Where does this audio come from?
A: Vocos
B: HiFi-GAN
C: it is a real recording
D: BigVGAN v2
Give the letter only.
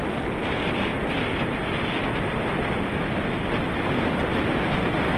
C